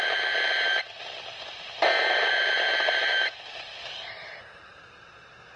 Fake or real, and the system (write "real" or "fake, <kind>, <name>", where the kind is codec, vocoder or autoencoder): fake, vocoder, BigVGAN v2